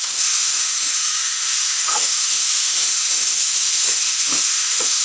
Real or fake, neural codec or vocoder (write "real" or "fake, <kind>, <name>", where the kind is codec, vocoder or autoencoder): fake, autoencoder, DAC-VAE